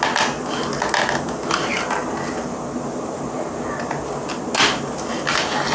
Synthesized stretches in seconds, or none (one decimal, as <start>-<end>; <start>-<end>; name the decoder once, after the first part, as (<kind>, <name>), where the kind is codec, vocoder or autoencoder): none